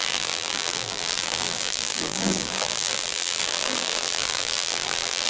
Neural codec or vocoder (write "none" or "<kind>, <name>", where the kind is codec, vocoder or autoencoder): vocoder, BigVGAN v2